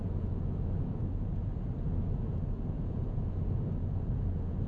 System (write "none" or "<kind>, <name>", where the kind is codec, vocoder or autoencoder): vocoder, Vocos